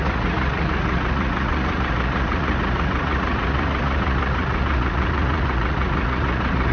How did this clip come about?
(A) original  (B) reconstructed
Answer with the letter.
B